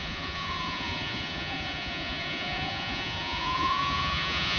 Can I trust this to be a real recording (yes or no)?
no